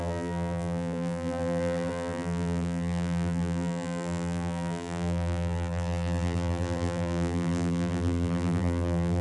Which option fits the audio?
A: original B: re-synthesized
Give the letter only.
B